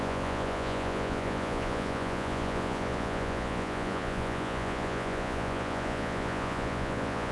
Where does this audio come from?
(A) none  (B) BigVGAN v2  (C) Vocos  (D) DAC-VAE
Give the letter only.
C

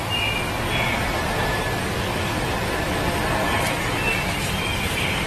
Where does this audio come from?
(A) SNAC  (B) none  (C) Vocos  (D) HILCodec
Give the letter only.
B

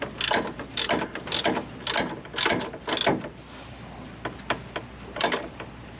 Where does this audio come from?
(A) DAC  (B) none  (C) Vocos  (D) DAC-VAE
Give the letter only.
B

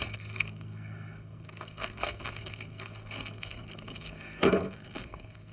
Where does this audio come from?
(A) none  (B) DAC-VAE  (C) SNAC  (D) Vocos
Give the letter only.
C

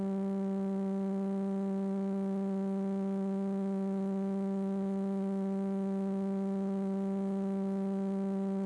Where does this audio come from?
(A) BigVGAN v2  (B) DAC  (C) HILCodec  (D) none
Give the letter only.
D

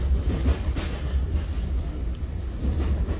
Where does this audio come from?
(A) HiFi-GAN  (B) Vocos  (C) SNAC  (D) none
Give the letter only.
D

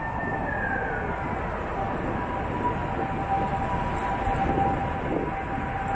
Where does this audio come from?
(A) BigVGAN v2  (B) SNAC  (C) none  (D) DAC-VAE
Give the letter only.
C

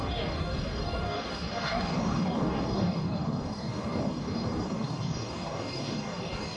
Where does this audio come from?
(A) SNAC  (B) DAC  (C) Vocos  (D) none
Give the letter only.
B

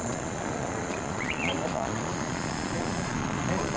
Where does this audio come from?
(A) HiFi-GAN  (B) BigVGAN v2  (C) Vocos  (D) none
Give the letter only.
C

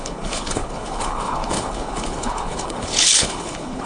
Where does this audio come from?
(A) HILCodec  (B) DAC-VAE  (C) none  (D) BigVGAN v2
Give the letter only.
A